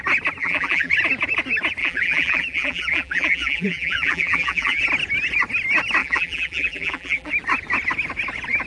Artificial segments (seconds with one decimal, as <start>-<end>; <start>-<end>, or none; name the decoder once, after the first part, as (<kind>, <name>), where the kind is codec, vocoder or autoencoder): 0.4-0.9 (vocoder, BigVGAN v2); 1.8-4.8; 6.0-7.3